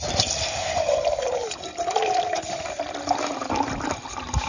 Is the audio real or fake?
real